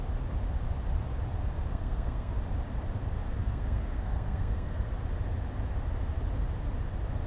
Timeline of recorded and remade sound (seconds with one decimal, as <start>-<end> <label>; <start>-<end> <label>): 0.0-1.7 recorded; 1.7-2.3 remade; 2.3-3.4 recorded; 3.4-4.9 remade; 4.9-7.3 recorded